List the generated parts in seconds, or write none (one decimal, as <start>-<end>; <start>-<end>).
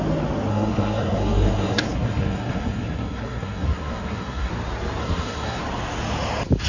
0.5-4.5; 5.0-5.6